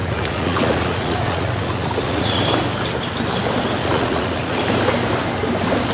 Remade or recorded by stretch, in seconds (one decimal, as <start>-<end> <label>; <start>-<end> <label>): 0.0-2.4 remade; 2.4-3.8 recorded; 3.8-4.6 remade; 4.6-5.9 recorded